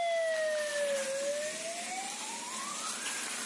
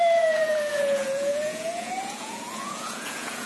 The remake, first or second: second